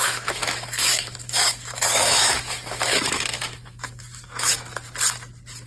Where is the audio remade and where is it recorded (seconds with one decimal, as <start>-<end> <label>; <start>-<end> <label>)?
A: 0.0-4.5 remade; 4.5-5.7 recorded